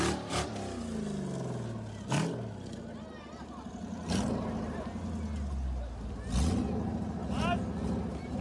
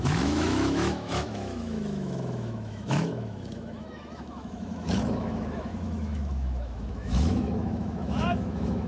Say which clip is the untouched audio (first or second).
first